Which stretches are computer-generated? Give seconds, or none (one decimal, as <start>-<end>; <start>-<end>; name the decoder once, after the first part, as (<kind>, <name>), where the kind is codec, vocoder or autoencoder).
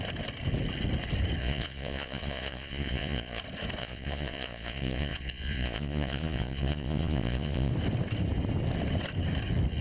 1.4-3.4 (vocoder, Vocos); 3.8-7.7